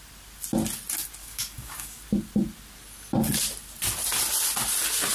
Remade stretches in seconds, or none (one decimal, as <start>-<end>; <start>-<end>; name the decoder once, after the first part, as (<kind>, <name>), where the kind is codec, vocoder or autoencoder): 1.2-2.0 (codec, DAC)